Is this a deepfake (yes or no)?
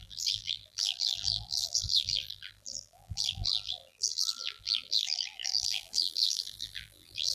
yes